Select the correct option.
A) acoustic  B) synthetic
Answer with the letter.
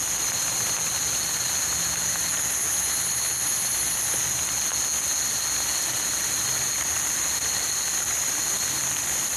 A